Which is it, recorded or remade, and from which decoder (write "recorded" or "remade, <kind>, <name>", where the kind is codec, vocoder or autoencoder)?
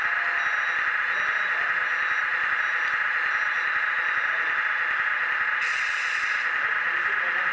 recorded